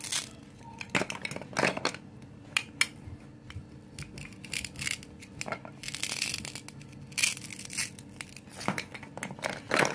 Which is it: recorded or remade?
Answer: recorded